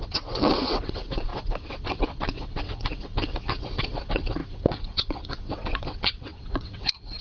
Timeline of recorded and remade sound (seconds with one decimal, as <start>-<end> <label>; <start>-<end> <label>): 0.0-7.2 remade